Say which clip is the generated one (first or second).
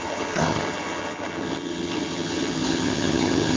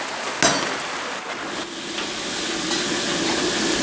first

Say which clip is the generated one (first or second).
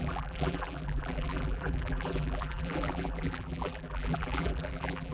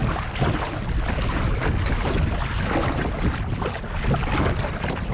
first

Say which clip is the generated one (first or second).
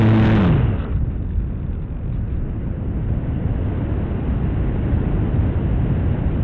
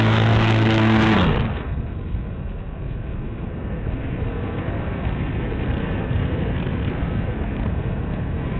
second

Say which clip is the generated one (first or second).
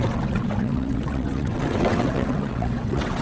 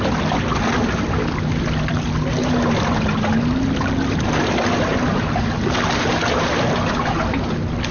first